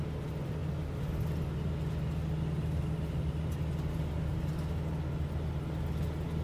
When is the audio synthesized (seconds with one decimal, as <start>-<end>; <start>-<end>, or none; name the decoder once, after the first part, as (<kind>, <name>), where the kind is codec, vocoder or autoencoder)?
none